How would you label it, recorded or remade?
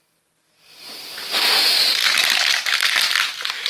recorded